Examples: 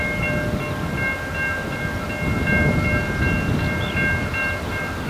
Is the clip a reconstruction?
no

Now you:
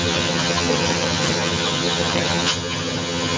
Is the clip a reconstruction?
yes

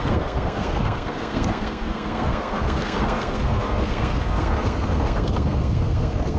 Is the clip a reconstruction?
yes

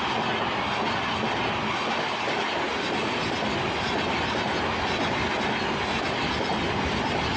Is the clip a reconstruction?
no